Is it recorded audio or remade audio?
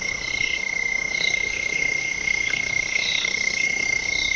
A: remade